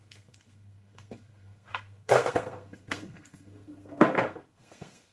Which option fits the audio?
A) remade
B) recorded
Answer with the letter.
A